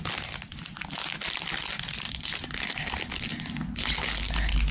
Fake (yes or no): no